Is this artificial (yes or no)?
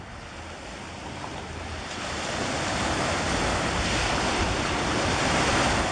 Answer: no